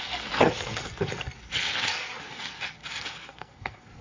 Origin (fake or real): fake